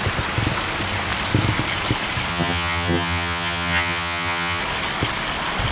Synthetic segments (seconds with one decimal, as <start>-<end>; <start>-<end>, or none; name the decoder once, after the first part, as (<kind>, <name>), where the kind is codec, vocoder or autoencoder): 2.3-4.6 (vocoder, HiFi-GAN)